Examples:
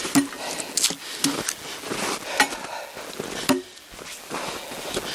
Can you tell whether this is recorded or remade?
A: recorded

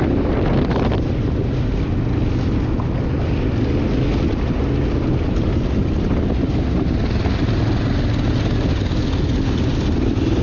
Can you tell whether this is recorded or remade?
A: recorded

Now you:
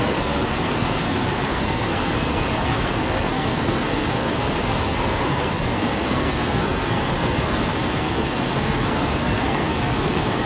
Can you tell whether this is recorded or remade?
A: remade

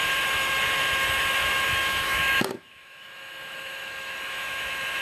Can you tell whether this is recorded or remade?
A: remade